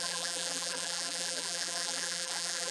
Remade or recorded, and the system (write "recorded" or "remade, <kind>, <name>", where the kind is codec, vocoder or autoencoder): remade, vocoder, BigVGAN v2